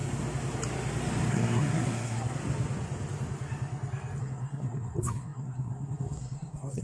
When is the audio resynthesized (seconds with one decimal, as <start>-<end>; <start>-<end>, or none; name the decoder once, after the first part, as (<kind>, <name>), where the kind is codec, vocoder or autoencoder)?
1.3-2.4 (codec, SNAC); 4.2-6.8